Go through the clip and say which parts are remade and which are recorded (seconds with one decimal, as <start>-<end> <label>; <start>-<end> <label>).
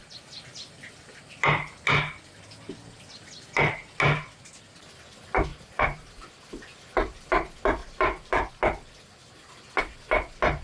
0.0-5.5 recorded; 5.5-6.1 remade; 6.1-7.8 recorded; 7.8-8.5 remade; 8.5-10.6 recorded